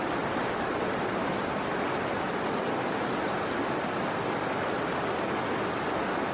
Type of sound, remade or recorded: recorded